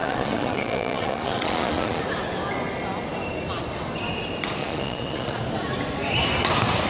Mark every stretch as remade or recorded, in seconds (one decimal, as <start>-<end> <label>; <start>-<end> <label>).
0.0-2.0 remade; 2.0-4.6 recorded; 4.6-5.4 remade; 5.4-6.9 recorded